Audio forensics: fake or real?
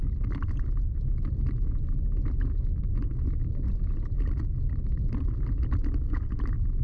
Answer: real